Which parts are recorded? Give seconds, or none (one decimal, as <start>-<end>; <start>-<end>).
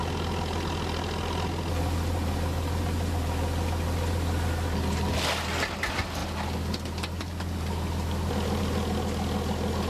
0.0-9.9